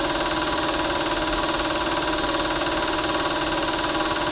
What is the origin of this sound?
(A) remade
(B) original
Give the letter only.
B